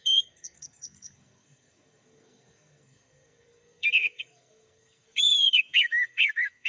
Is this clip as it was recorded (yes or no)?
no